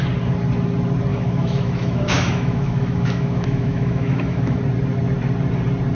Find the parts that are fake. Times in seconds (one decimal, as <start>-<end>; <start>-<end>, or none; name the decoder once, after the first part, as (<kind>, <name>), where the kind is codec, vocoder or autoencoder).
1.1-4.6 (autoencoder, DAC-VAE)